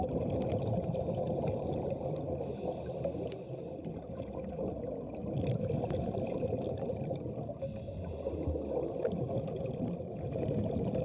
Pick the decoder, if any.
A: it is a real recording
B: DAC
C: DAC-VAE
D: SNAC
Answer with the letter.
A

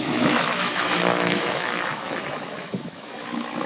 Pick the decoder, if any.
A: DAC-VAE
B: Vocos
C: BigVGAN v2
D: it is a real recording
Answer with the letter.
A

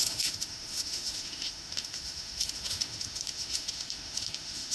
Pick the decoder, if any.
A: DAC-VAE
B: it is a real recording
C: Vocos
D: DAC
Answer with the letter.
A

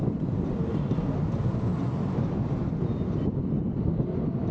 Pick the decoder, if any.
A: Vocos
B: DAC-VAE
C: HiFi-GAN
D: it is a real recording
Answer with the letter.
D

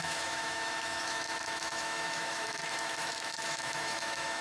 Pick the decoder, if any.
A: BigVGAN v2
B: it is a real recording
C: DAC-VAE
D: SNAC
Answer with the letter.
C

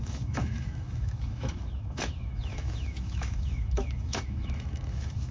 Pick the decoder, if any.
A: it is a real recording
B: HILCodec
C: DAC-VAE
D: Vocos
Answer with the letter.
C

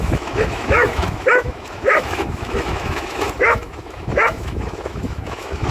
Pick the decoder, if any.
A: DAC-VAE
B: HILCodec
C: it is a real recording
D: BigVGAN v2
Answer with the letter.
A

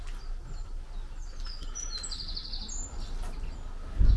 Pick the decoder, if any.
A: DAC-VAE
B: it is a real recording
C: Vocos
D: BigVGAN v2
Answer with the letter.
B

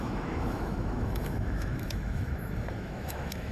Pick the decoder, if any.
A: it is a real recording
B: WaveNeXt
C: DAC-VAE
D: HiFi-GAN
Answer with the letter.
C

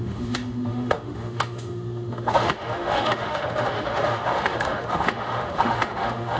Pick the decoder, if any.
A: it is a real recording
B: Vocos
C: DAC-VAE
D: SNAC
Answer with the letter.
C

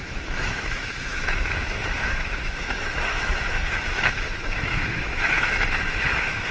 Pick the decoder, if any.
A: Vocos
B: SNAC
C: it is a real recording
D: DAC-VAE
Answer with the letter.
D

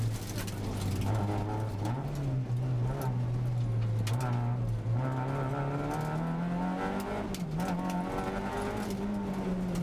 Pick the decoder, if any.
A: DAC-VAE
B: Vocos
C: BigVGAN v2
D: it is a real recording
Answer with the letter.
D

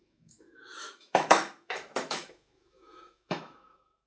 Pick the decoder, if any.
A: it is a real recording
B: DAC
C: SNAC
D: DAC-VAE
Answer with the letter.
D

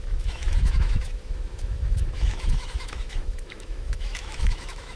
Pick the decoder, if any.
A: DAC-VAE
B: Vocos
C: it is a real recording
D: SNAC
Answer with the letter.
A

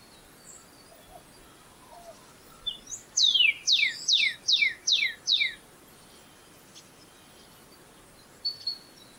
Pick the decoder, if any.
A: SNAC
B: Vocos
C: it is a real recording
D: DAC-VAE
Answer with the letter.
C